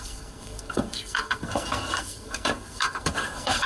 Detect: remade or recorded remade